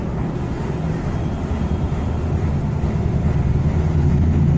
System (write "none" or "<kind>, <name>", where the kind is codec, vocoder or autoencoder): none